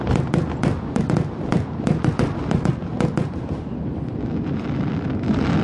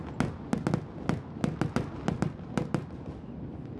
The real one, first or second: second